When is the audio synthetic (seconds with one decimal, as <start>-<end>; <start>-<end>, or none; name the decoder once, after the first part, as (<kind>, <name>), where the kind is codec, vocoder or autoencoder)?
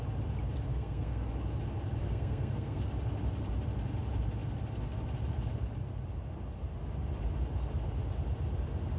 0.7-1.3 (codec, SNAC); 2.0-2.8